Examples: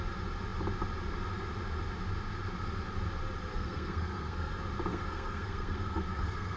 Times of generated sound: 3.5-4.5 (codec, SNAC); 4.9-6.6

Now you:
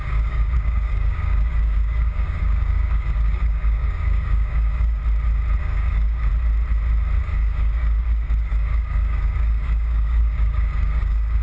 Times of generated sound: 0.0-5.0 (codec, DAC); 5.6-6.3; 7.2-11.4